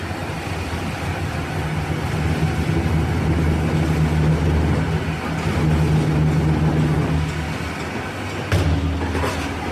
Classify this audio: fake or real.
real